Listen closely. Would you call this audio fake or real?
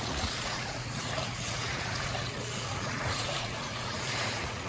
fake